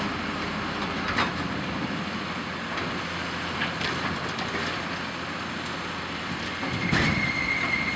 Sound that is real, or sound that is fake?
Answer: real